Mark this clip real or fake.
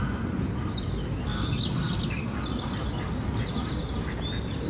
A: real